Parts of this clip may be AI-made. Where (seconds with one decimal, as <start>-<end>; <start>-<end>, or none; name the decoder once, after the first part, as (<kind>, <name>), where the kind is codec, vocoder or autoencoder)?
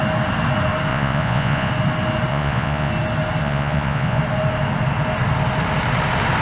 0.9-1.7 (vocoder, Vocos); 2.3-2.9; 3.4-4.2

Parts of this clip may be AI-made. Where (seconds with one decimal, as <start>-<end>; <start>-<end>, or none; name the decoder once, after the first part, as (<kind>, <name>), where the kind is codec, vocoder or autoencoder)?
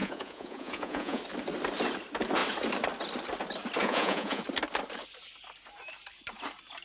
0.0-1.2 (vocoder, Vocos); 3.8-4.4